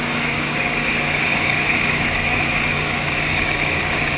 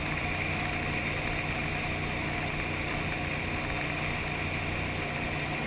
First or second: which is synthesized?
first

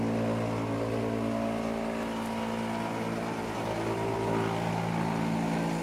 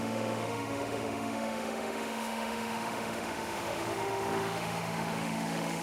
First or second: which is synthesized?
second